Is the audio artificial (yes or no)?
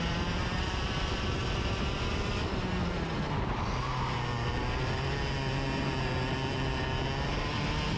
no